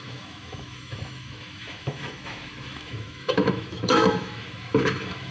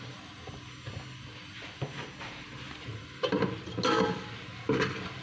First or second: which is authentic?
second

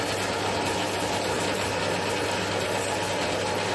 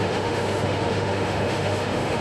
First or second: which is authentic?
first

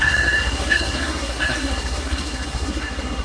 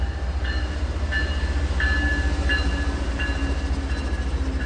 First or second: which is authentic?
second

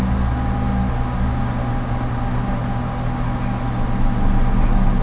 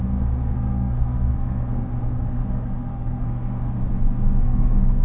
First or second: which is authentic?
first